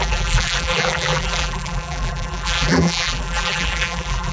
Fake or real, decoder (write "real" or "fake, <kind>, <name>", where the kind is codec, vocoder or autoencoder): fake, vocoder, BigVGAN v2